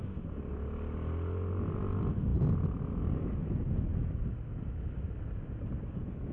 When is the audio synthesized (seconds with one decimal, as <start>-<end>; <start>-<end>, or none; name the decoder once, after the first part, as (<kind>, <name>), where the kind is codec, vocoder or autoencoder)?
none